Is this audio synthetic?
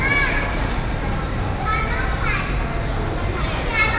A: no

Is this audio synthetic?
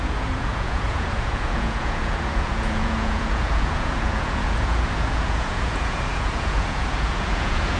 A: yes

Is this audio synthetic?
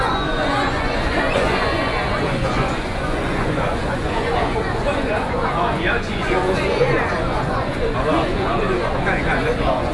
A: yes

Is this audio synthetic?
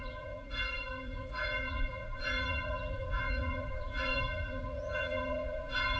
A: yes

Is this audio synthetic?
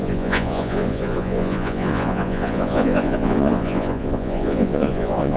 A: yes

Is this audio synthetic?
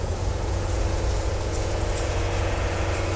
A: yes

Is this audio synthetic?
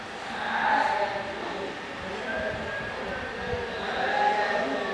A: no